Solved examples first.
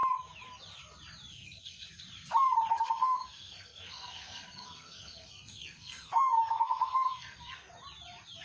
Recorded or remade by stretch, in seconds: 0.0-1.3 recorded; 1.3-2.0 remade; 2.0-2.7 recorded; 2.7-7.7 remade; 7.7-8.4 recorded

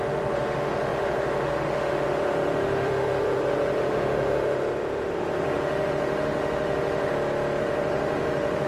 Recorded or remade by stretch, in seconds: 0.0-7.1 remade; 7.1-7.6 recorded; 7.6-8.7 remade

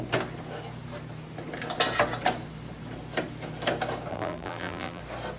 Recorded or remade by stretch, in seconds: 0.0-4.1 recorded; 4.1-5.0 remade; 5.0-5.4 recorded